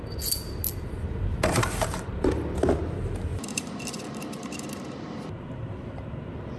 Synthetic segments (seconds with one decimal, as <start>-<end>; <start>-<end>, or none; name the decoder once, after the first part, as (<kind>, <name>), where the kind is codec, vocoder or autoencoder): 1.3-2.3 (vocoder, BigVGAN v2); 3.3-4.7